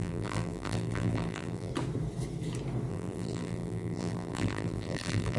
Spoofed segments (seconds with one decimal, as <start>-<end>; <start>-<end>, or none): 0.0-1.7; 2.9-5.4